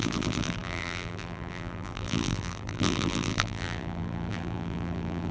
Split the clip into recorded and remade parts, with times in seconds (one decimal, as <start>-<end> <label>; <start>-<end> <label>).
0.0-5.3 remade